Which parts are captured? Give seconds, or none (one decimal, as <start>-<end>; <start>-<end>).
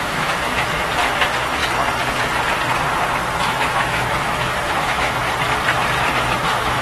1.6-3.4; 5.2-6.1